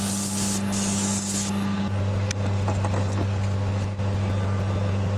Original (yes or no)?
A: yes